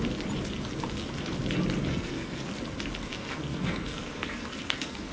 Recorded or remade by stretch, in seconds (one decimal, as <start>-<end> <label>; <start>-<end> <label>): 0.0-1.9 recorded; 1.9-2.5 remade; 2.5-3.1 recorded; 3.1-5.1 remade